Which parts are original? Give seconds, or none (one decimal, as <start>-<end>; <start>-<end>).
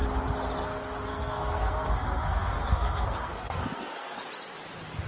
0.0-1.1; 4.2-5.1